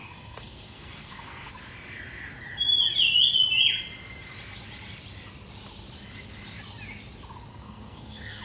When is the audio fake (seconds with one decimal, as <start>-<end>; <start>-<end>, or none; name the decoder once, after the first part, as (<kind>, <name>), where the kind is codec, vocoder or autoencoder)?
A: 0.0-1.5 (codec, SNAC); 7.5-8.4